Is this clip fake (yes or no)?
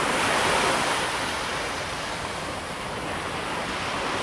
no